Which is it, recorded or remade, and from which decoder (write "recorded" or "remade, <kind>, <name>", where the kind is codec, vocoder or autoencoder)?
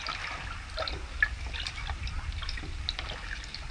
recorded